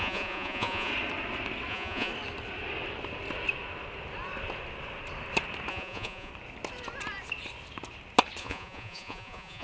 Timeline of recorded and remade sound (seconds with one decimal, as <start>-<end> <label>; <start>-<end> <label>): 0.0-0.9 remade; 0.9-1.7 recorded; 1.7-2.1 remade; 2.1-5.7 recorded; 5.7-6.3 remade; 6.3-8.4 recorded; 8.4-9.6 remade